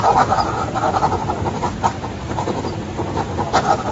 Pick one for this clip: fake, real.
real